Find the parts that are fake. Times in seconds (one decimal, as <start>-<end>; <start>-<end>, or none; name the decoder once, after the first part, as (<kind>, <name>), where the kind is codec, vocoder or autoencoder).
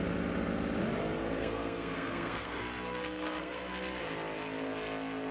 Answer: 1.4-3.6 (codec, SNAC)